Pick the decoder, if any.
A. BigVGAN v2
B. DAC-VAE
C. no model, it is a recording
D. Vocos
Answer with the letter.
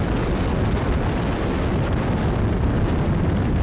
C